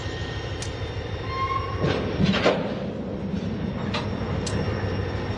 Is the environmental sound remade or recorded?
recorded